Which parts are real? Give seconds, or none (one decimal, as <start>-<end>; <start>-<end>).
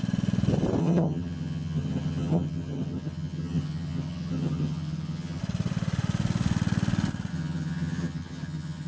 0.0-0.8; 5.4-7.3